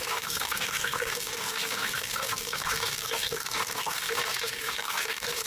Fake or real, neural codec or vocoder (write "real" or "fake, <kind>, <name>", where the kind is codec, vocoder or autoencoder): fake, codec, DAC